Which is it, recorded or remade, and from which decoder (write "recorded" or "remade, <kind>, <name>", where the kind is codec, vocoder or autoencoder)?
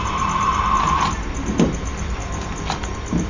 remade, vocoder, BigVGAN v2